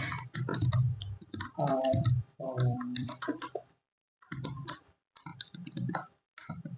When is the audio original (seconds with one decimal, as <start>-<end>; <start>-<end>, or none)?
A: 0.5-1.7; 5.3-6.8